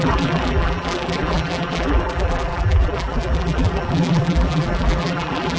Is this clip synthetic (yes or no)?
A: yes